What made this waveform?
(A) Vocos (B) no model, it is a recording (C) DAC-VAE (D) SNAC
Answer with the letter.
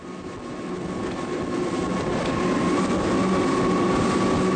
B